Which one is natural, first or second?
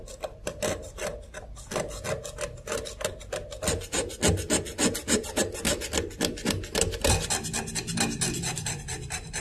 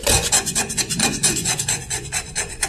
first